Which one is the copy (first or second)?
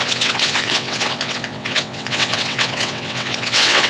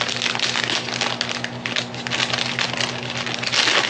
first